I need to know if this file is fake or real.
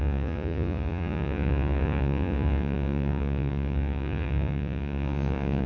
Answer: fake